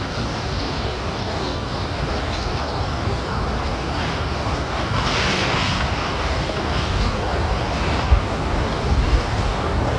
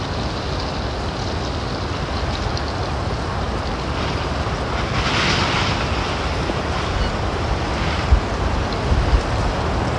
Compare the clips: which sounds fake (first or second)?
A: first